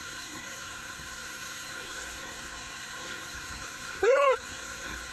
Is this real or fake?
fake